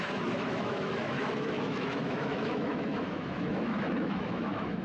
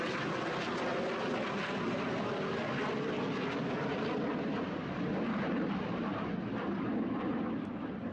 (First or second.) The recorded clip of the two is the second